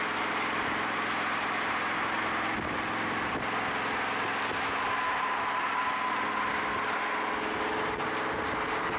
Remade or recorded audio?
recorded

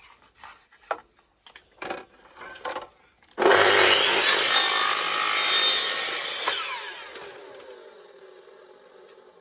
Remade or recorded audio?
recorded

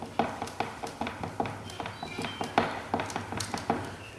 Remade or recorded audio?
recorded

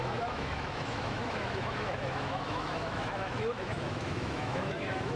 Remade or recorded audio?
remade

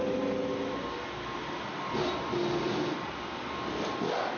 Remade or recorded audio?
recorded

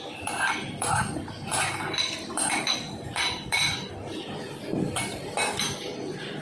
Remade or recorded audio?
remade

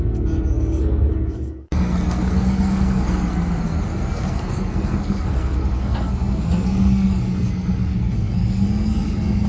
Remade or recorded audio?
remade